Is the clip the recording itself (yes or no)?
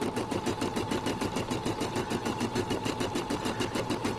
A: no